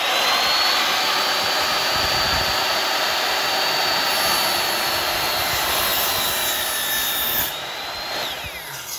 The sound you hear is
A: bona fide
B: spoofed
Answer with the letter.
A